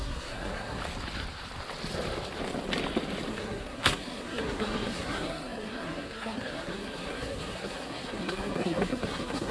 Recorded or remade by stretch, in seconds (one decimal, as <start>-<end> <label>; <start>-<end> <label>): 0.0-0.8 remade; 0.8-3.3 recorded; 3.3-9.5 remade